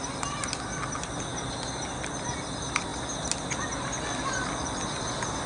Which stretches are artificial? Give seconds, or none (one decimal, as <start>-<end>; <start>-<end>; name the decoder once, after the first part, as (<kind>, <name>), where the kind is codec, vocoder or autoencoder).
none